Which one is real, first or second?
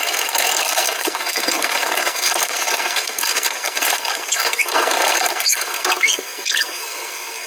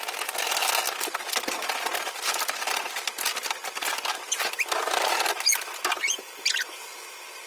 second